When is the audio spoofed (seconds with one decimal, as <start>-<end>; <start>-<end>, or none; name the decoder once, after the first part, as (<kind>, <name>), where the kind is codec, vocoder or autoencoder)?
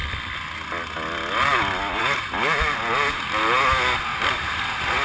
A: 4.1-4.6 (vocoder, BigVGAN v2)